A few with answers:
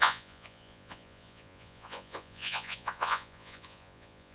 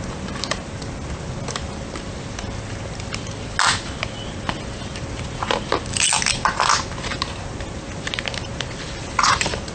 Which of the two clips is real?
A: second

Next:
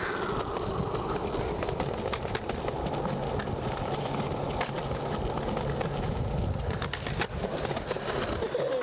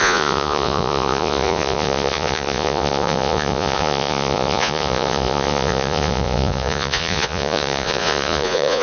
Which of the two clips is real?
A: first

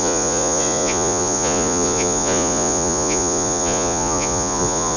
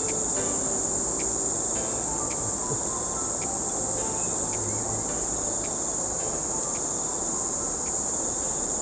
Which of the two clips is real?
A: second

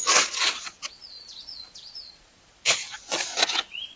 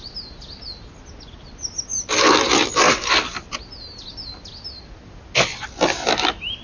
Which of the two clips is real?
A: second